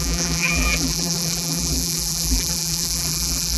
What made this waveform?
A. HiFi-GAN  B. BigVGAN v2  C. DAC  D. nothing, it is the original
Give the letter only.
B